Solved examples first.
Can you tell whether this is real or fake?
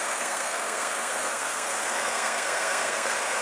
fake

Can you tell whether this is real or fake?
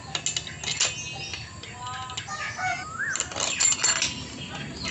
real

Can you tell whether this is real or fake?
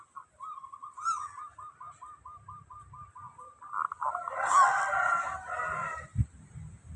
real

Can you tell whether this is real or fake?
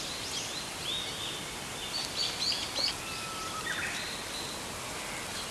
real